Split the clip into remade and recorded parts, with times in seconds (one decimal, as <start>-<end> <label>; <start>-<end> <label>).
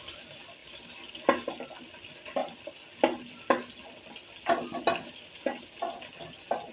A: 0.0-6.7 recorded